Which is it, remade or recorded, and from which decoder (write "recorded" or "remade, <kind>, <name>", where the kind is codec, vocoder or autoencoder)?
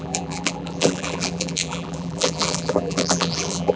remade, vocoder, BigVGAN v2